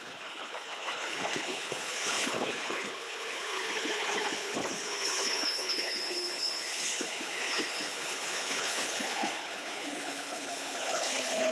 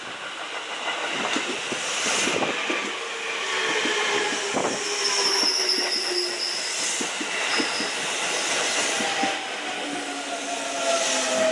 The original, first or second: second